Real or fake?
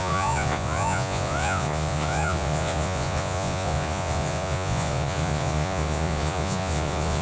fake